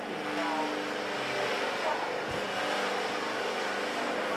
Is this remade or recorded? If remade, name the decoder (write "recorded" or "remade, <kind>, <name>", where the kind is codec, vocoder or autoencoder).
recorded